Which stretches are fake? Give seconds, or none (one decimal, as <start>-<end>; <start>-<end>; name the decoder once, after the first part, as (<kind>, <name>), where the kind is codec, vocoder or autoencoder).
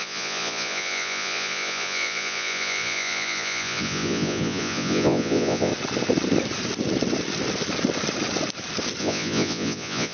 0.0-5.7 (vocoder, Vocos); 9.0-10.1